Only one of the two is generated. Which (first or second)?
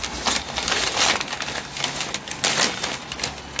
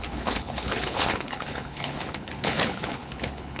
second